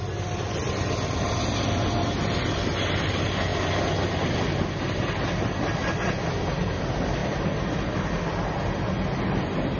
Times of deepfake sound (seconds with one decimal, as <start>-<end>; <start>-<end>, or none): none